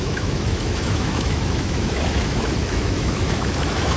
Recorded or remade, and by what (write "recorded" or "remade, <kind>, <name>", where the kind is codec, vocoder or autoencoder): remade, autoencoder, DAC-VAE